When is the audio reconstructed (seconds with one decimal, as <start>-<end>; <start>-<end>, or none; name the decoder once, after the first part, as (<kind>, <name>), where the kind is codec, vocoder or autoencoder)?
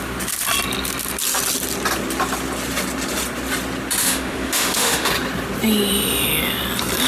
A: 4.0-5.1 (autoencoder, DAC-VAE)